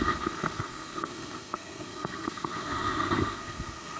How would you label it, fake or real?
fake